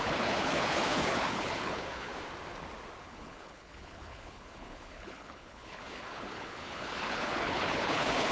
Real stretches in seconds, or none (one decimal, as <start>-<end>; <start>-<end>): 2.1-3.0

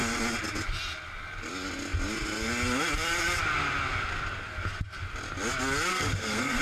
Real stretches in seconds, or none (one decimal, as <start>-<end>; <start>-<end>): 0.0-5.9

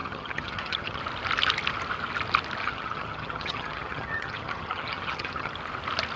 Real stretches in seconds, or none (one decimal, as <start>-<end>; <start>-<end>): 1.0-2.6; 5.5-6.2

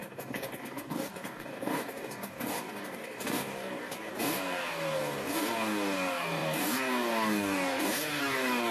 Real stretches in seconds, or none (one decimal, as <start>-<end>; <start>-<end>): none